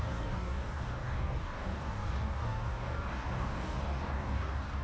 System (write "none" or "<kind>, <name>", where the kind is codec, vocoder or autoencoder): codec, DAC